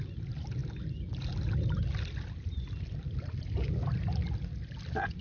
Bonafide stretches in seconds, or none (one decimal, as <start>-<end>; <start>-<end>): 0.0-5.2